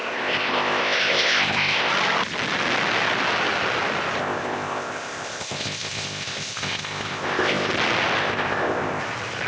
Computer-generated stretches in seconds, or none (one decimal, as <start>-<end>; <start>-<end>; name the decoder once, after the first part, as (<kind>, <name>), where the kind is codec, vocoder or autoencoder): 0.0-1.9 (codec, ZipCodec); 4.2-7.7; 8.2-9.0